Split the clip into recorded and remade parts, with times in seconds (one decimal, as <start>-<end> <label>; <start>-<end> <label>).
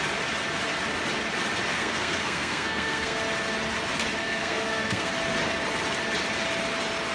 0.0-1.7 recorded; 1.7-3.2 remade; 3.2-4.2 recorded; 4.2-5.1 remade; 5.1-7.1 recorded